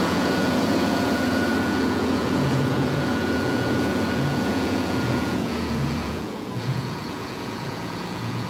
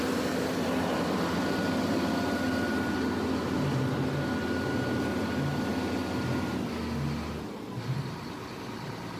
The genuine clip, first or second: second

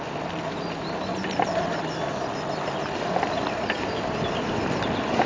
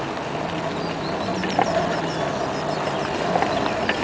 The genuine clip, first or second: second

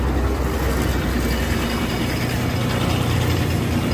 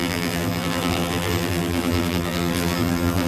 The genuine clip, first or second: first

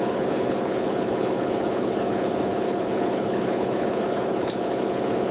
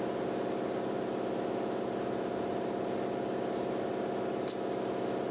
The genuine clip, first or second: second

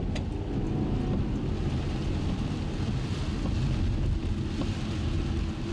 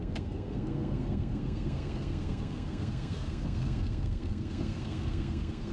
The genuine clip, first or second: first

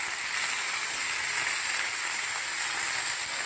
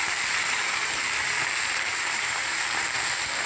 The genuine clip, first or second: first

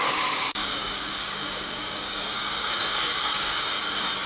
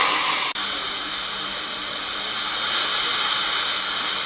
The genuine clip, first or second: second